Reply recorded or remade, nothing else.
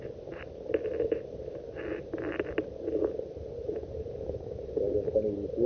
recorded